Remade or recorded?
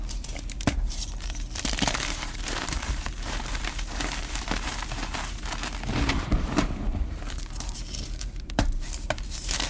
remade